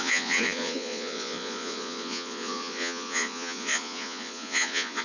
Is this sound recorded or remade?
remade